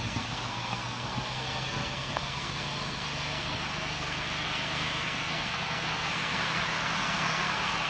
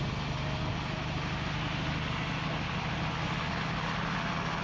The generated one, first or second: first